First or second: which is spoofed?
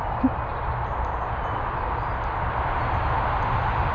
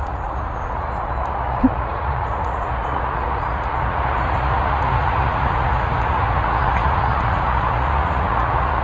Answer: second